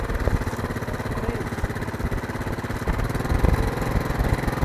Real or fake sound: real